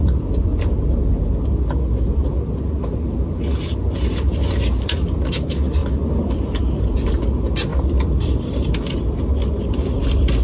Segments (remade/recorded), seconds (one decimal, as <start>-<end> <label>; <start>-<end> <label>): 0.0-5.8 recorded; 5.8-6.3 remade; 6.3-7.7 recorded; 7.7-9.1 remade; 9.1-10.4 recorded